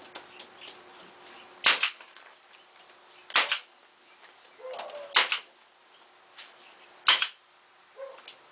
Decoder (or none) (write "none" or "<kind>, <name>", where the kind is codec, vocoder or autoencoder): none